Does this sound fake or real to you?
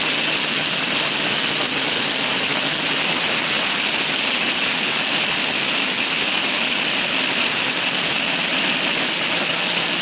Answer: real